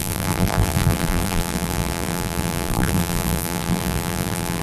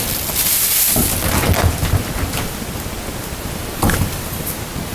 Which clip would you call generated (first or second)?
first